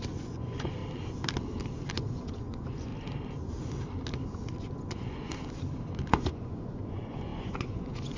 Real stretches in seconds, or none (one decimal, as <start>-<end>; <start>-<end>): 0.8-1.9; 2.9-4.6; 5.3-6.1